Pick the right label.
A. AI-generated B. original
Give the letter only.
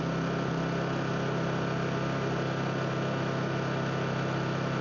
B